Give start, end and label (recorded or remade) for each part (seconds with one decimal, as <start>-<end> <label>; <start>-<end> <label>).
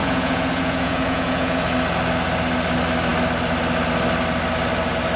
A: 0.0-1.6 remade; 1.6-5.2 recorded